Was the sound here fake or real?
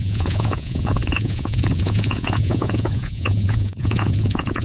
fake